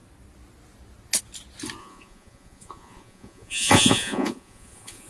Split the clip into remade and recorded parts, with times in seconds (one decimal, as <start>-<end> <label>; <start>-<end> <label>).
0.0-1.8 recorded; 1.8-5.1 remade